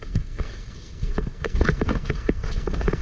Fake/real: fake